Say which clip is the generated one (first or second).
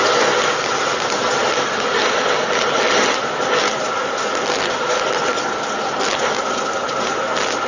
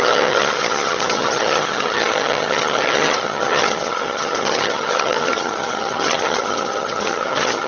second